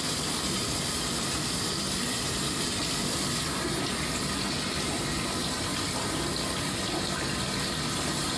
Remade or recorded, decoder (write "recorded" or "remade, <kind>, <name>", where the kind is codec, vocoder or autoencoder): recorded